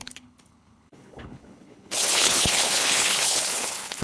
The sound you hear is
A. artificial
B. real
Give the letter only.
A